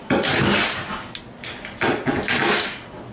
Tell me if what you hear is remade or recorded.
recorded